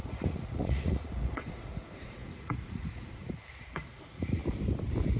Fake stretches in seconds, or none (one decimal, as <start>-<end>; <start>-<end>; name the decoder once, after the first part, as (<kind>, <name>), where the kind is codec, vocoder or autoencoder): 0.0-4.4 (vocoder, Vocos)

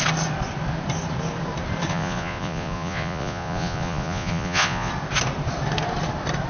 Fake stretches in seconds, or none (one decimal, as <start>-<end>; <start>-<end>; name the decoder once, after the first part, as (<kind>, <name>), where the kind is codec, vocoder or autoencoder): 1.9-4.9 (vocoder, Vocos)

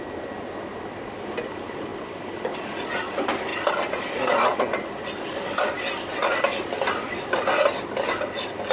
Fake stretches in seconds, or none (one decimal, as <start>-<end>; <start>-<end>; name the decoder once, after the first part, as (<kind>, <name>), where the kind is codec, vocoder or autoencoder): none

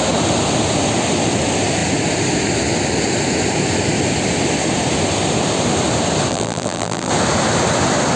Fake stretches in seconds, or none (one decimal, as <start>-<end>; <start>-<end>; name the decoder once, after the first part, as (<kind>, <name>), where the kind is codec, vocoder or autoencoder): 6.3-7.1 (vocoder, BigVGAN v2)

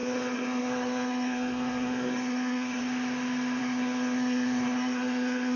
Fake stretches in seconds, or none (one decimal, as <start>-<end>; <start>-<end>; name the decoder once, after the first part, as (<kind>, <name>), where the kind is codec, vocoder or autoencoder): 0.0-2.8 (codec, SNAC); 3.6-5.6

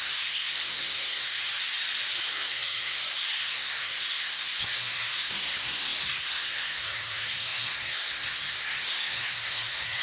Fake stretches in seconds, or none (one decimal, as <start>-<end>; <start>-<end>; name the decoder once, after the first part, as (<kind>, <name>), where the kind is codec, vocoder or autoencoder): 0.0-1.4 (codec, SNAC); 2.2-10.0

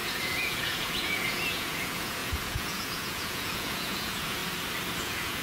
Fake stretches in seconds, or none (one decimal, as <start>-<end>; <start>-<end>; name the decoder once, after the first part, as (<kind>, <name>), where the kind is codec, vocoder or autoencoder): 0.0-4.4 (vocoder, Vocos); 5.0-5.4